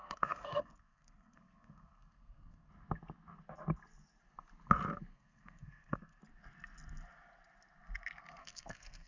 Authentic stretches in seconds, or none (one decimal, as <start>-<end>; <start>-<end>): 2.7-5.1; 6.2-8.4